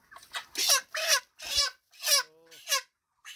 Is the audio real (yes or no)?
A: yes